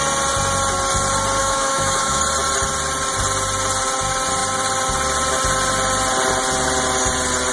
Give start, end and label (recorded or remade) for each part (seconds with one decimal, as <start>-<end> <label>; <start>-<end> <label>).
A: 0.0-1.4 recorded; 1.4-2.2 remade; 2.2-7.5 recorded